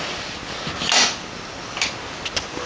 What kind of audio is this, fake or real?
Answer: real